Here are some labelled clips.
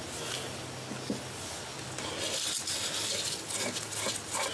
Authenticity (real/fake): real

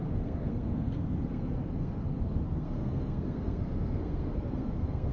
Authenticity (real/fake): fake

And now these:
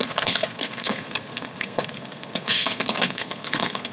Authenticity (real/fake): fake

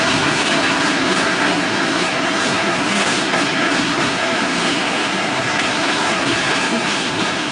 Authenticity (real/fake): fake